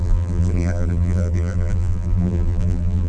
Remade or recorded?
remade